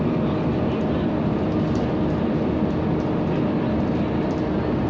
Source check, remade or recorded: recorded